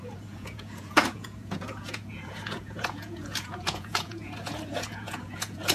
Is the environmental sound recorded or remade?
remade